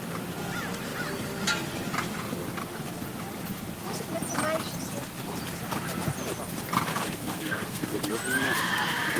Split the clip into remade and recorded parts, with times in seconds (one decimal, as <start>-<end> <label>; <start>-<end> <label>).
0.0-6.9 recorded; 6.9-8.0 remade; 8.0-9.2 recorded